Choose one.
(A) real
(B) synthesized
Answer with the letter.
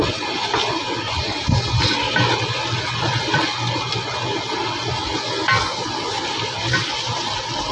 A